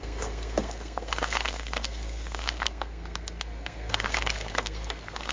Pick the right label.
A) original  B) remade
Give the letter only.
B